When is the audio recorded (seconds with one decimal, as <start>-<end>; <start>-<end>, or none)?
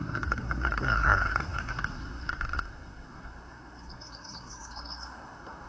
none